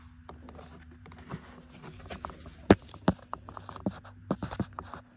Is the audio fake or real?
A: real